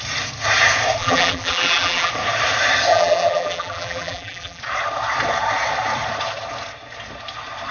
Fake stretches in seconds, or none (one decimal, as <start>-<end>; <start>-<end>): 1.0-2.1; 2.9-4.6